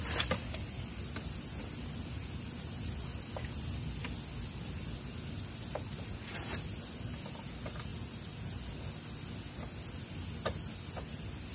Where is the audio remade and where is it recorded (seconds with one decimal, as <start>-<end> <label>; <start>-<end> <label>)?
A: 0.0-11.5 recorded